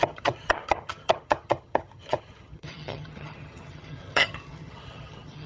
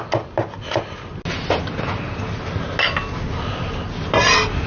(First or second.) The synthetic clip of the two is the first